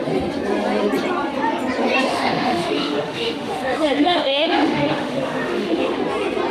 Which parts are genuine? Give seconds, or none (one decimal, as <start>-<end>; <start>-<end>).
0.0-2.1; 6.0-6.5